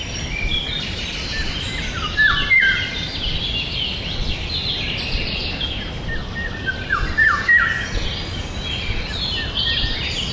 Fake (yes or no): no